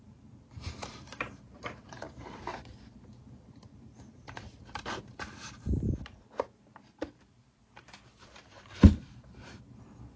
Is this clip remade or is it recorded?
remade